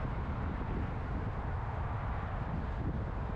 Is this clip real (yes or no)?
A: yes